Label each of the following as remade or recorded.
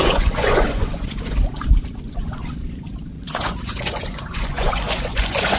remade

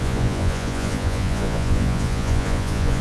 remade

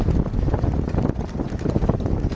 recorded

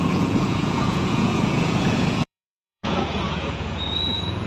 remade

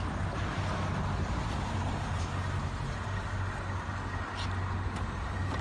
recorded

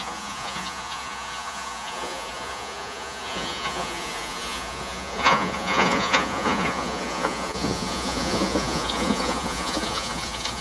remade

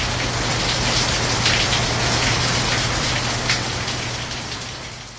recorded